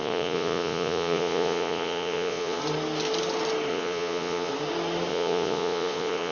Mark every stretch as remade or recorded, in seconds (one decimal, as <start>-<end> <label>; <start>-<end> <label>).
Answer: 0.0-2.6 remade; 2.6-3.7 recorded; 3.7-4.5 remade; 4.5-5.1 recorded; 5.1-6.3 remade